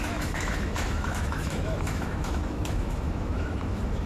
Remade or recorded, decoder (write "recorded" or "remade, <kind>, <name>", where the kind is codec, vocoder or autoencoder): remade, autoencoder, DAC-VAE